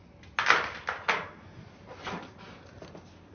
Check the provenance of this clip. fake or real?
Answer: real